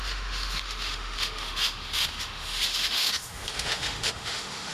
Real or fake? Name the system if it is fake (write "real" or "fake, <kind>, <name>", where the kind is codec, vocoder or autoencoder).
fake, autoencoder, DAC-VAE